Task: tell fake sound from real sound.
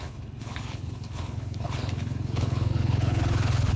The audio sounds fake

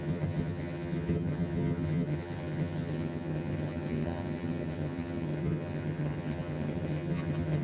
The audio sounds fake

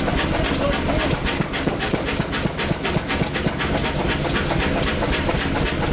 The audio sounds real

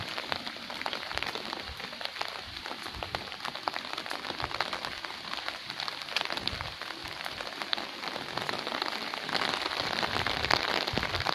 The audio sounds fake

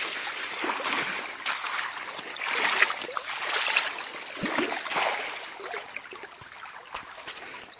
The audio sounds real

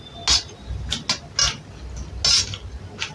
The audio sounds real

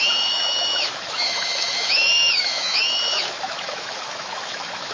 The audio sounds fake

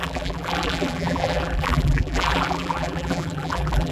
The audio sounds fake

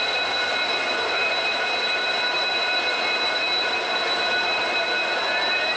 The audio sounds real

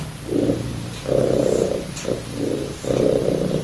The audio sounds real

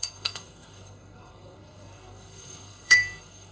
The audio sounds fake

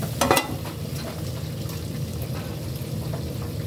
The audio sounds fake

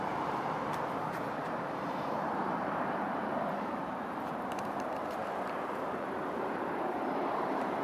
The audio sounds fake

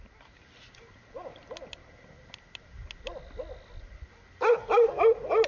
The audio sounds real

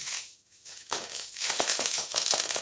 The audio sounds fake